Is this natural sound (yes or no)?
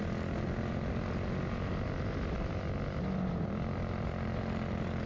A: yes